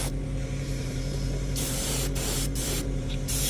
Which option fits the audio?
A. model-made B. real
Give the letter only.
A